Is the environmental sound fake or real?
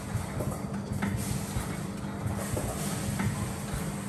real